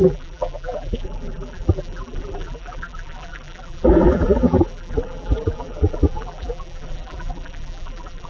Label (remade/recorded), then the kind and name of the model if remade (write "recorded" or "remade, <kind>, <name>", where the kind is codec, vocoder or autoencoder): remade, vocoder, BigVGAN v2